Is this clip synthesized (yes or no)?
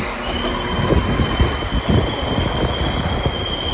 no